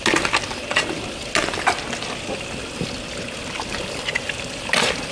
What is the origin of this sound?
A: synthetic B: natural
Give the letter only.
B